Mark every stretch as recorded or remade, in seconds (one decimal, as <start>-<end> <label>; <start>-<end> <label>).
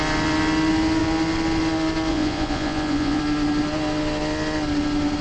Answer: 0.0-2.1 recorded; 2.1-3.2 remade; 3.2-5.2 recorded